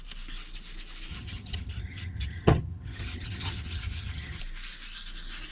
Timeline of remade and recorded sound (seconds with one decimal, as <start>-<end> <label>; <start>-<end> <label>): 0.0-1.1 recorded; 1.1-4.4 remade; 4.4-5.5 recorded